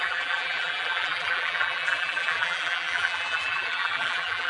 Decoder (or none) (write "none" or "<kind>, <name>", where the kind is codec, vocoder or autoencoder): vocoder, BigVGAN v2